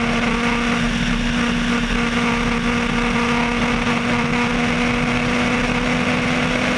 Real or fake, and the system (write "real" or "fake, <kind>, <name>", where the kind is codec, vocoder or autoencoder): real